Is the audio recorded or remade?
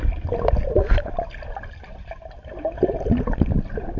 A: recorded